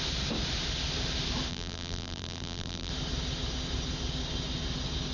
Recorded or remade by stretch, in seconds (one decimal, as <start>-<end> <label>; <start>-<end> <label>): 0.0-1.5 recorded; 1.5-2.9 remade; 2.9-5.1 recorded